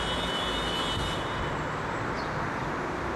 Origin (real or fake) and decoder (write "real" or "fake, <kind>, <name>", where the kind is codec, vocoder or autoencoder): real